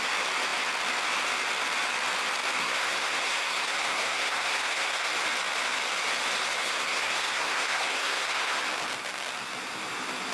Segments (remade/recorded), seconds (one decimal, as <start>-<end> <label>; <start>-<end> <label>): 0.0-2.6 recorded; 2.6-5.1 remade; 5.1-6.6 recorded; 6.6-8.6 remade; 8.6-10.3 recorded